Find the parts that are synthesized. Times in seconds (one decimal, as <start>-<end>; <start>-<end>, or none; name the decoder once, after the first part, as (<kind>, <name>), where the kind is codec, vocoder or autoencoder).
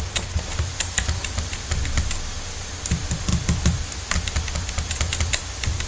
none